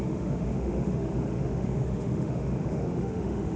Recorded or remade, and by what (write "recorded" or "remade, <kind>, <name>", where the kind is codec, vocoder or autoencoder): remade, autoencoder, DAC-VAE